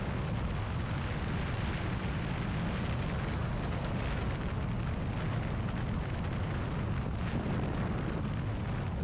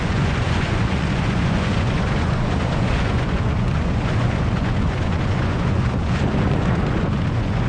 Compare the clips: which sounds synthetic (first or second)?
second